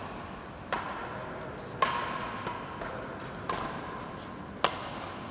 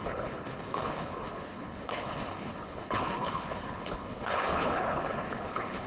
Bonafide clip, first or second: first